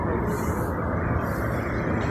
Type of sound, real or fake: real